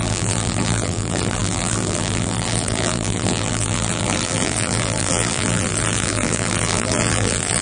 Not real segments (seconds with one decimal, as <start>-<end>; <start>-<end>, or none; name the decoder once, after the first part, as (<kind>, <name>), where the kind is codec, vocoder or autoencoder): 0.0-7.6 (vocoder, BigVGAN v2)